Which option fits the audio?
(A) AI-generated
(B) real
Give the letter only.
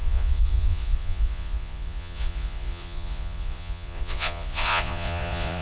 A